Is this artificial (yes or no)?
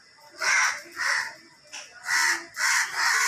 no